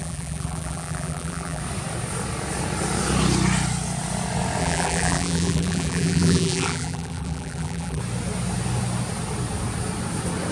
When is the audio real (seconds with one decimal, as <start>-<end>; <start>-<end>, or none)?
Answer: 1.6-4.6; 8.0-10.5